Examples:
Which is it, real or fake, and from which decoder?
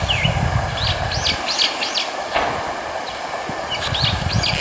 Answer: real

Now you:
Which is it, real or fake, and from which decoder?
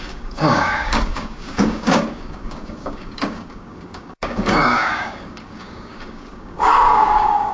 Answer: fake, codec, DAC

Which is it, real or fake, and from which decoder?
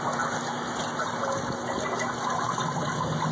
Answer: real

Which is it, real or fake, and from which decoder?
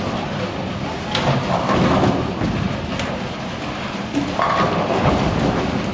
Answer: real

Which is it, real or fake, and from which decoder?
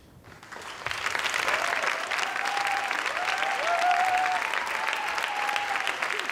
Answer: real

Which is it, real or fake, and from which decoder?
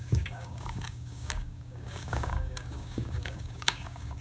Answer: fake, codec, DAC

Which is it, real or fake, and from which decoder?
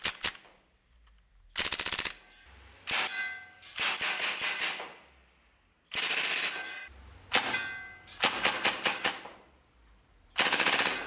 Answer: real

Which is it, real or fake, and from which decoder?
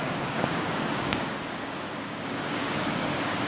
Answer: fake, codec, DAC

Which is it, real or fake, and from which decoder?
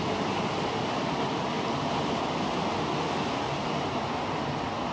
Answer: real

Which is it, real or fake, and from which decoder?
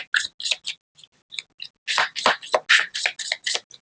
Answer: real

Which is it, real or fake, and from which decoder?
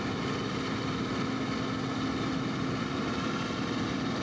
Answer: real